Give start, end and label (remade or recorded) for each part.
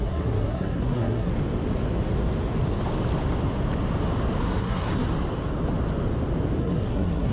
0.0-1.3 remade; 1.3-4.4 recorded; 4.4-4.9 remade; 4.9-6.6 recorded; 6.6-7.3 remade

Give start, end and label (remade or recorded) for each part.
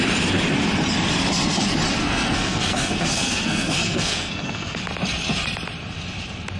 0.0-2.0 recorded; 2.0-4.8 remade; 4.8-6.6 recorded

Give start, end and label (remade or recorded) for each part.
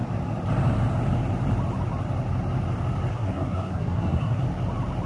0.0-3.1 recorded; 3.1-4.4 remade; 4.4-5.1 recorded